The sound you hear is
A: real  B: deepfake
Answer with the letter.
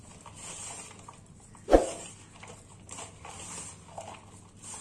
A